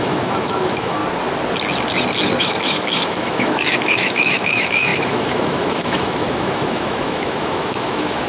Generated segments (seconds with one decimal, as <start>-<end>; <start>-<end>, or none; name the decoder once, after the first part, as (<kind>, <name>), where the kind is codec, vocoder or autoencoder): 0.0-1.0 (autoencoder, DAC-VAE); 2.4-8.3